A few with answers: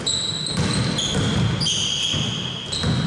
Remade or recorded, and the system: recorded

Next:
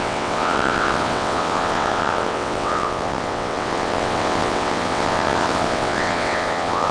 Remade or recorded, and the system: remade, vocoder, WaveNeXt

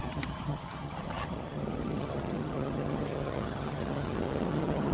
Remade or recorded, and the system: remade, vocoder, HiFi-GAN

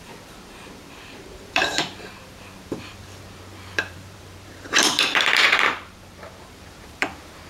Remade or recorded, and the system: remade, vocoder, BigVGAN v2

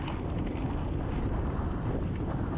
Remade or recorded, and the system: recorded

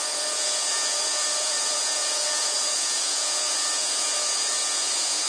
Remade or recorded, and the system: remade, vocoder, Vocos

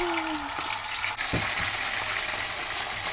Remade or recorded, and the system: recorded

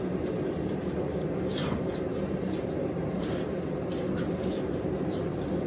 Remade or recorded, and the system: remade, vocoder, BigVGAN v2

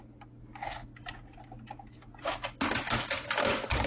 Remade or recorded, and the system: recorded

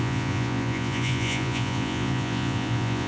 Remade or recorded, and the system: remade, vocoder, Vocos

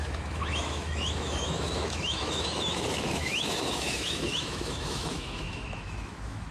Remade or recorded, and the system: remade, autoencoder, DAC-VAE